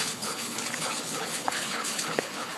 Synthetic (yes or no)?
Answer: yes